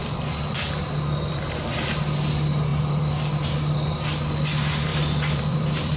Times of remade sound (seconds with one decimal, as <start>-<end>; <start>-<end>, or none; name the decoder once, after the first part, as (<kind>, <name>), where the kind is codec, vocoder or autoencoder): 4.9-6.0 (vocoder, BigVGAN v2)